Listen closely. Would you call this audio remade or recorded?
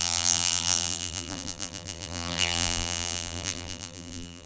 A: remade